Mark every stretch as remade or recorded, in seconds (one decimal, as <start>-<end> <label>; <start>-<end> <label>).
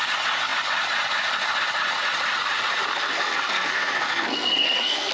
0.0-2.9 recorded; 2.9-5.1 remade